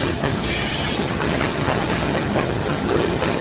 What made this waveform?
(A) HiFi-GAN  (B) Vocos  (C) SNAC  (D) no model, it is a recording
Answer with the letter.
A